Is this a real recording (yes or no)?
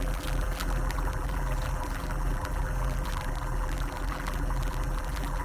no